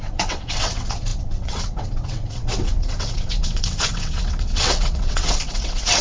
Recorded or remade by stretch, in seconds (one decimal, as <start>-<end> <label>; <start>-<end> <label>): 0.0-6.0 remade